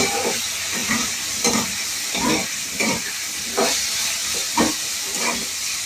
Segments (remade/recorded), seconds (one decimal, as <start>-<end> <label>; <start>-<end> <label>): 0.0-5.9 recorded